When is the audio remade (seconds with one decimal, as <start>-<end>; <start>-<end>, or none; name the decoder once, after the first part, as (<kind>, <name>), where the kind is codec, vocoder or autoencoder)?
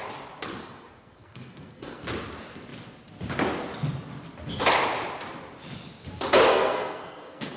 0.6-2.0 (codec, SNAC); 6.5-7.6